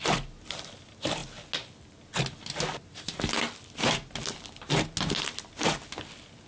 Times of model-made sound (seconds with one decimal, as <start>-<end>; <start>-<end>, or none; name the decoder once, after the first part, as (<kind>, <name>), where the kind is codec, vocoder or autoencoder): none